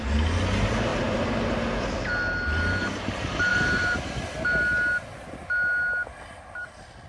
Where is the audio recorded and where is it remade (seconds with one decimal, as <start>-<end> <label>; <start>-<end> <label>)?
0.0-3.5 recorded; 3.5-4.1 remade; 4.1-7.1 recorded